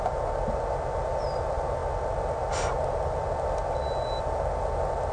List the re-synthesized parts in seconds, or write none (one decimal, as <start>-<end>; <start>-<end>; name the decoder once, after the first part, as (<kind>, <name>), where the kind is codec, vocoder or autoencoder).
none